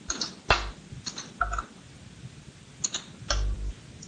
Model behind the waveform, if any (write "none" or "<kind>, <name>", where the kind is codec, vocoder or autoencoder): none